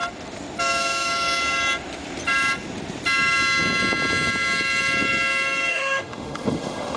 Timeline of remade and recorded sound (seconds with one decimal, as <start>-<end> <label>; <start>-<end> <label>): 0.0-5.7 recorded; 5.7-7.0 remade